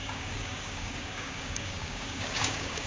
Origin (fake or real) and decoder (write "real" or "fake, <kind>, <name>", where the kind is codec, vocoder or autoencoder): fake, codec, DAC